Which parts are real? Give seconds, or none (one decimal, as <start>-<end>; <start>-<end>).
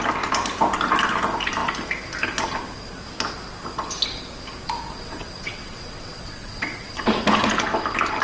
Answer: 0.0-4.9; 7.2-8.2